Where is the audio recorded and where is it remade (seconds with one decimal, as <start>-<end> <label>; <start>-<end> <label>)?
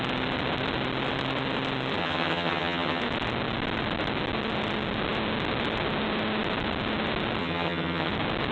0.0-2.0 recorded; 2.0-3.0 remade; 3.0-7.4 recorded; 7.4-8.1 remade; 8.1-8.5 recorded